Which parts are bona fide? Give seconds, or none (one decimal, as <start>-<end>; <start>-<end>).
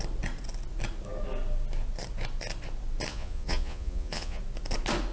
0.0-3.1; 4.4-5.1